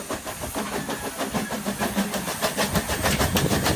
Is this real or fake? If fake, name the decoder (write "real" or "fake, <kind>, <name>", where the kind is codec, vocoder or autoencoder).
real